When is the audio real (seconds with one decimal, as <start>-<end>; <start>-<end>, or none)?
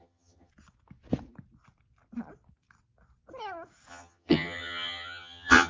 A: 0.5-3.9